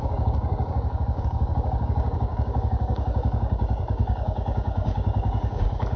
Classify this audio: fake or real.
fake